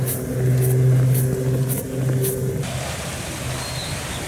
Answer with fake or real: real